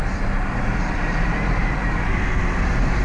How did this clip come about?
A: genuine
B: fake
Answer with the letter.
B